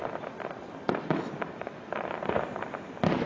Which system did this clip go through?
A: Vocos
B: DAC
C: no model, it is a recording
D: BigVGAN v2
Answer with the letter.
D